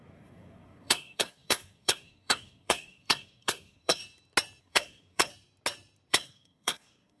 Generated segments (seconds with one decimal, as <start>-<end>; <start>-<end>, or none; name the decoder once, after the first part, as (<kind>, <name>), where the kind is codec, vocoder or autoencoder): 0.0-4.0 (codec, SNAC); 4.6-5.3; 6.1-7.2